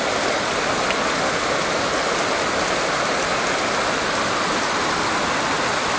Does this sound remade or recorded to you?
recorded